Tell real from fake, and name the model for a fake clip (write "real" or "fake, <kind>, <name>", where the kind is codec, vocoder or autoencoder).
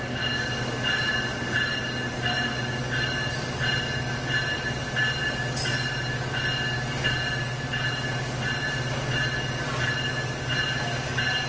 real